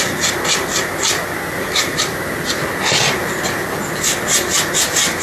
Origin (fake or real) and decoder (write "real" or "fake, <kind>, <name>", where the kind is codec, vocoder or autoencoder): real